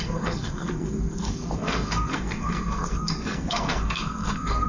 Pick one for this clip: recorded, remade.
remade